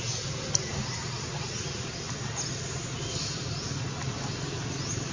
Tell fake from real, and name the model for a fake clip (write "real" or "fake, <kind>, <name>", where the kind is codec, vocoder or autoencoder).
real